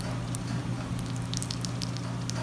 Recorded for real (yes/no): yes